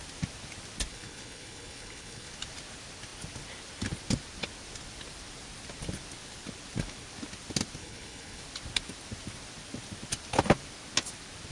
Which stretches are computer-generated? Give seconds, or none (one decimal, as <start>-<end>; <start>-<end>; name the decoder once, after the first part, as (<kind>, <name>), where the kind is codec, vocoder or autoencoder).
0.9-2.3 (codec, HILCodec); 7.8-8.4